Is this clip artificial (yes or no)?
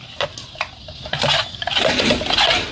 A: no